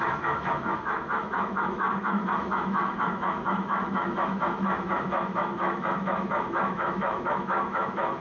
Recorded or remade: remade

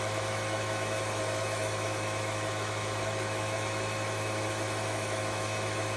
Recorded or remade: remade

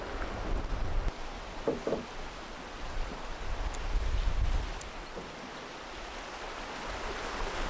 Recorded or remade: recorded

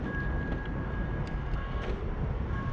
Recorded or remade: recorded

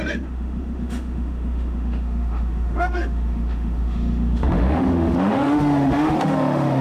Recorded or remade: remade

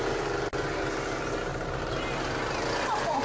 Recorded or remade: recorded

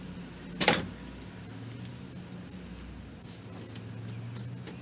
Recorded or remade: recorded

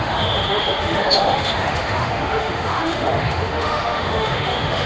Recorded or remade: remade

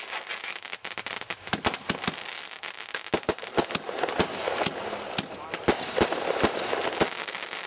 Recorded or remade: recorded